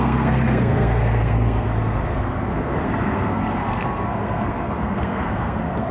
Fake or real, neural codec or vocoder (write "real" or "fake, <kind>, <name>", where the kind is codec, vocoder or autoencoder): fake, codec, SNAC